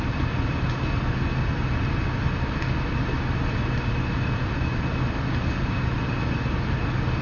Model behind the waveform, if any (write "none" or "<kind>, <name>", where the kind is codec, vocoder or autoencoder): none